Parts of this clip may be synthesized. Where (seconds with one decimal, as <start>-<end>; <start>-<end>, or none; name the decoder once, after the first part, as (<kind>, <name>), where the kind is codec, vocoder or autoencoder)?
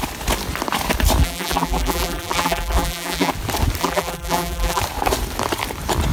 1.2-3.3 (vocoder, BigVGAN v2); 3.8-4.8